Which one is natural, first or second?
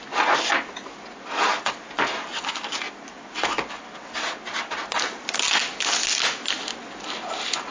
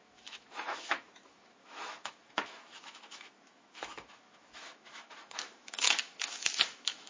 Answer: first